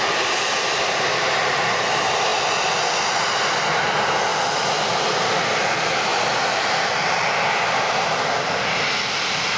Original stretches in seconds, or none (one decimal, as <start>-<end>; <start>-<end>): 0.0-9.6